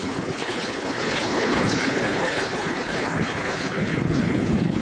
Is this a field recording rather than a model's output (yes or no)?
no